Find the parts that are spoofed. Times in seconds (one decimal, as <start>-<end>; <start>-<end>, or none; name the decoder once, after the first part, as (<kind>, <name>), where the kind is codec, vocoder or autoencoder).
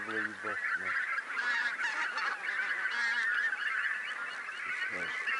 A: none